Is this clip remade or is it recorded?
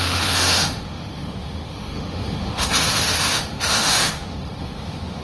remade